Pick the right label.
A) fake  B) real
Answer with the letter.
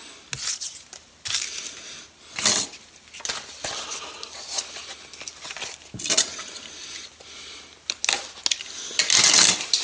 B